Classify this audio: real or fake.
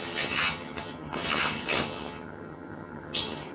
fake